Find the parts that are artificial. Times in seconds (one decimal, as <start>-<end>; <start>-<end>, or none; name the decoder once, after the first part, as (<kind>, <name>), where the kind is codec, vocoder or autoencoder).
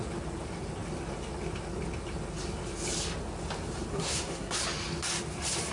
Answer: 3.9-4.6 (codec, SNAC)